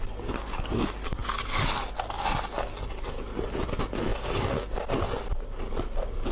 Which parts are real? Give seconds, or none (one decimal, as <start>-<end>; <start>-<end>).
0.0-6.3